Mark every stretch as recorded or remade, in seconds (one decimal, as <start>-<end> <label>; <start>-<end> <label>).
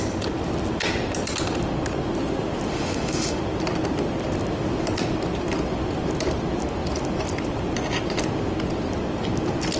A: 0.0-2.7 recorded; 2.7-3.4 remade; 3.4-9.8 recorded